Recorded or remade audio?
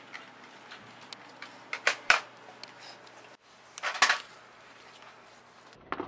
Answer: recorded